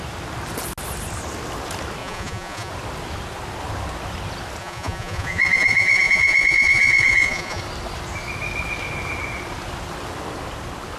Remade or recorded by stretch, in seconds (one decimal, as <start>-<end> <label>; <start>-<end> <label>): 0.0-2.0 recorded; 2.0-2.7 remade; 2.7-4.6 recorded; 4.6-7.6 remade; 7.6-11.0 recorded